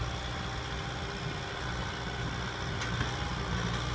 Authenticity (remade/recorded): recorded